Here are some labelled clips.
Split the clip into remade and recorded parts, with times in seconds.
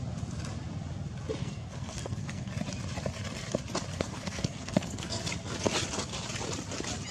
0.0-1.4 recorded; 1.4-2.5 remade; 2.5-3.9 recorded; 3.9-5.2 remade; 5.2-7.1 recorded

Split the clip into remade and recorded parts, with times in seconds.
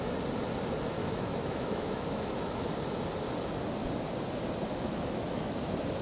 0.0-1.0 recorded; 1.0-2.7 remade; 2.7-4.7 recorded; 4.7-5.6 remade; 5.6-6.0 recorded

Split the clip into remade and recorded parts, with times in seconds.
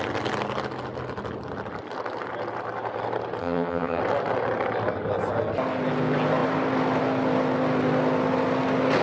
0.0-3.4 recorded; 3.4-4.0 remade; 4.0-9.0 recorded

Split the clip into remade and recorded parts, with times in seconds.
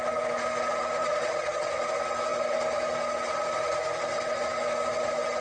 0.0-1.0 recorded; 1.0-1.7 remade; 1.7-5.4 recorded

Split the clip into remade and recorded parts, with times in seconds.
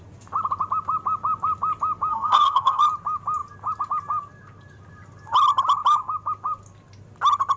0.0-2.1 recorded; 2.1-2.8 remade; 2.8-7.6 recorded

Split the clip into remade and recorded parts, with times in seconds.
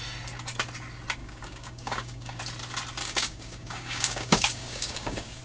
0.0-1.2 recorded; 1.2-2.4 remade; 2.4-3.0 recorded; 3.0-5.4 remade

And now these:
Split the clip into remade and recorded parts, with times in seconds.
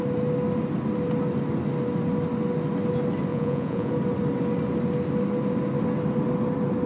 0.0-3.3 recorded; 3.3-3.9 remade; 3.9-6.9 recorded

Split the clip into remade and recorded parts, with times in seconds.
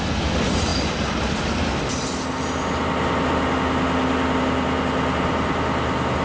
0.0-6.2 recorded